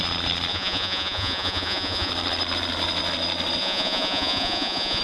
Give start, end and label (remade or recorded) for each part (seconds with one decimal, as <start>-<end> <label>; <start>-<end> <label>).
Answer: 0.0-0.5 recorded; 0.5-2.1 remade; 2.1-3.6 recorded; 3.6-5.0 remade